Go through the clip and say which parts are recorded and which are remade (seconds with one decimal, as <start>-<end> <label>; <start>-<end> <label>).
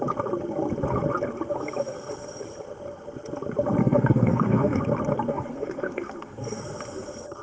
0.0-3.8 recorded; 3.8-4.8 remade; 4.8-5.3 recorded; 5.3-6.6 remade; 6.6-7.4 recorded